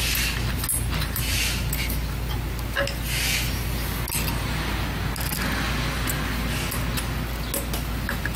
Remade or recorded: recorded